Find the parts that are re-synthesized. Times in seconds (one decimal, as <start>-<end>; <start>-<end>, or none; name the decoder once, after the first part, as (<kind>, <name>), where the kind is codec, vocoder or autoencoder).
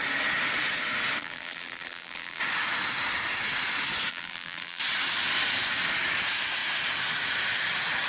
1.2-2.4 (vocoder, BigVGAN v2); 4.1-4.8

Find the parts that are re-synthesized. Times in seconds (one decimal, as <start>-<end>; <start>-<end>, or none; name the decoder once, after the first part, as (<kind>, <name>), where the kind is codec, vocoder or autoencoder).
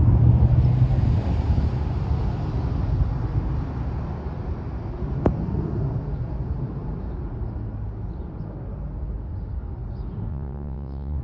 10.3-11.2 (vocoder, WaveNeXt)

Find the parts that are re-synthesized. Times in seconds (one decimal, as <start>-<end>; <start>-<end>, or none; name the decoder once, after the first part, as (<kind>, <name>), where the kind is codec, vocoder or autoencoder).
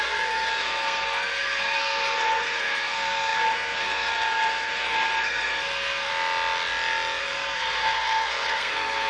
0.0-6.1 (codec, SNAC); 7.2-9.1